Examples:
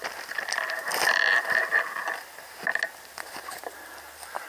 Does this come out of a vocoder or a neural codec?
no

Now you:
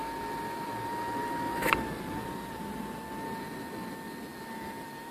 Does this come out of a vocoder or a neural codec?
no